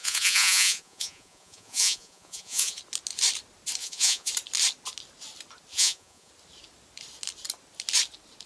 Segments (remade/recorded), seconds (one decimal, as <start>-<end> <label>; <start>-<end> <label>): 0.0-2.8 remade; 2.8-3.8 recorded; 3.8-4.3 remade; 4.3-5.7 recorded; 5.7-6.3 remade; 6.3-8.5 recorded